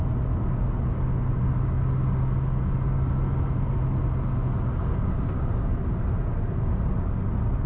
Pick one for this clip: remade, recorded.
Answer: recorded